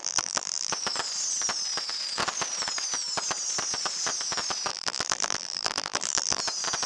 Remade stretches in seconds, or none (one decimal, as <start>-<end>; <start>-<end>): 0.0-0.7; 4.7-6.4